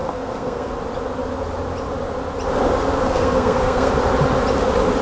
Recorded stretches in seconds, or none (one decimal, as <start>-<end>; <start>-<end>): 0.7-3.0; 3.9-5.0